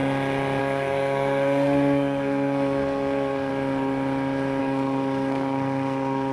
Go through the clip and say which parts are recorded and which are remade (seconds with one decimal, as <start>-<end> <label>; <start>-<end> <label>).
0.0-0.6 recorded; 0.6-3.5 remade; 3.5-4.6 recorded; 4.6-6.3 remade